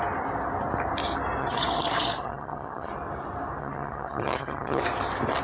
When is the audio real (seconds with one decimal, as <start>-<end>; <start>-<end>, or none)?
0.0-1.4; 2.9-3.6; 4.8-5.4